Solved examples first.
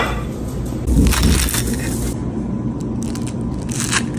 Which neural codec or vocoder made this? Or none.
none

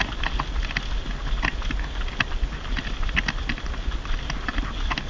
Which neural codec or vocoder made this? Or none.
none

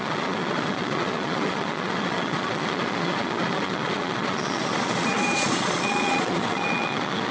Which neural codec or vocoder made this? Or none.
vocoder, Vocos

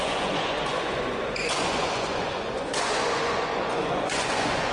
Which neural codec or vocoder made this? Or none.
vocoder, Vocos